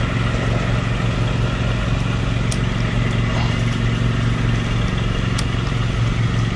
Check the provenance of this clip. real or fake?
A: real